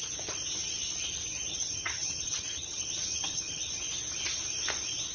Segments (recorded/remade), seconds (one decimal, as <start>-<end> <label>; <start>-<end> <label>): 0.0-1.5 recorded; 1.5-3.7 remade; 3.7-5.1 recorded